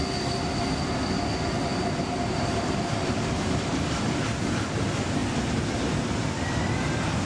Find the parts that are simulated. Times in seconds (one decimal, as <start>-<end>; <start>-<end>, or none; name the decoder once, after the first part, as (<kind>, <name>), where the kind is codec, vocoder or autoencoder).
1.7-4.5 (vocoder, BigVGAN v2)